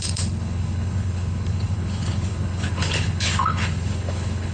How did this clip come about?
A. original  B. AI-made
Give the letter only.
B